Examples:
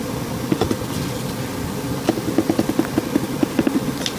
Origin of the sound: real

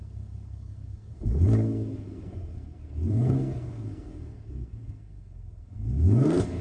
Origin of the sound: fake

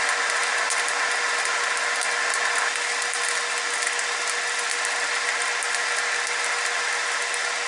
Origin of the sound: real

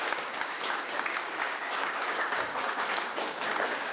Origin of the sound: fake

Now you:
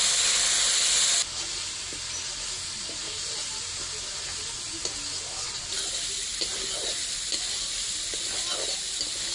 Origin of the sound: real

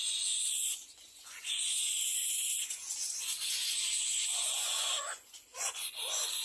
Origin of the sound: fake